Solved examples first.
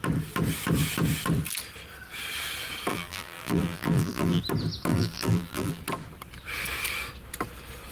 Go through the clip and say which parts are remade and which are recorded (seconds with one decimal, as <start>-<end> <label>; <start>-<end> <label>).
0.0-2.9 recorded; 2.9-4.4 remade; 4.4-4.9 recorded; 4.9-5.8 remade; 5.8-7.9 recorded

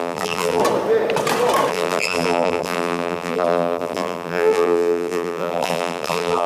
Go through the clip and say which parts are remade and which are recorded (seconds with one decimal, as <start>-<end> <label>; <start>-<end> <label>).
0.0-0.6 remade; 0.6-1.7 recorded; 1.7-6.5 remade

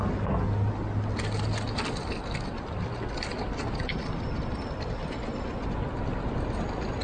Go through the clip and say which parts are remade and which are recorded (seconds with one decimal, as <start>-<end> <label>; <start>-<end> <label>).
0.0-3.3 recorded; 3.3-7.0 remade